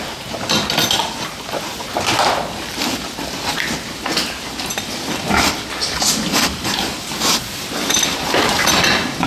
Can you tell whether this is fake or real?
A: real